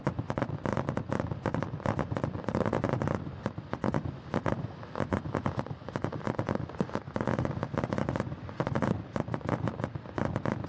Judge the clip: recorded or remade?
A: recorded